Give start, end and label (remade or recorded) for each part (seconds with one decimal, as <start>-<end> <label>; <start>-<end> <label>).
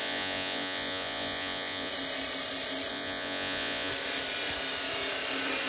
0.0-1.9 remade; 1.9-2.9 recorded; 2.9-3.9 remade; 3.9-5.7 recorded